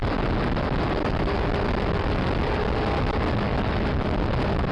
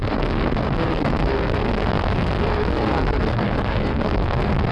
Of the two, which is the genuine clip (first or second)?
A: first